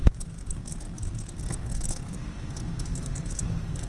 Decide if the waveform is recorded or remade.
remade